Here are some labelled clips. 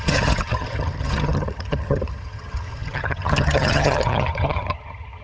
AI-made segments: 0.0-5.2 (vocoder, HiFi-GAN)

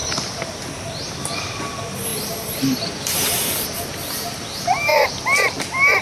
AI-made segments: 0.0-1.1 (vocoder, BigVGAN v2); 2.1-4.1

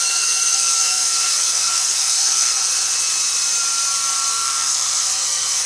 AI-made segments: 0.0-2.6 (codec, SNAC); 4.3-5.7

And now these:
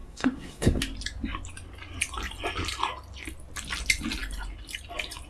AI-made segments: 0.0-0.8 (codec, SNAC)